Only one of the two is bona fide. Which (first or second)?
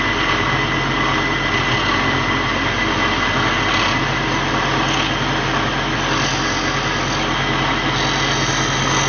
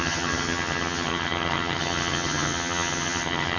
first